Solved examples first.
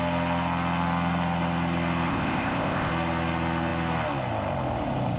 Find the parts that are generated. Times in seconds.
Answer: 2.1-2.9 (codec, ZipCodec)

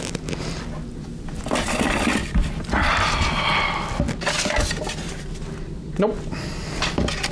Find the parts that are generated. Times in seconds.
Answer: none

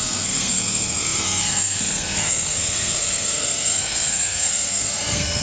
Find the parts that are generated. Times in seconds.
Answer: 0.0-5.4 (codec, SNAC)

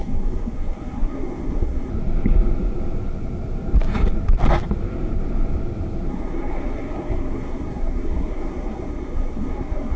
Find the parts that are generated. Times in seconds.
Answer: 0.0-1.9 (codec, SNAC); 6.1-10.0

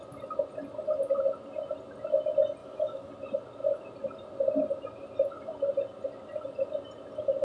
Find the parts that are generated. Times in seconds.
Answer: 2.6-3.1 (autoencoder, DAC-VAE)